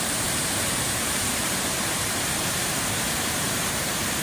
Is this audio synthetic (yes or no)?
yes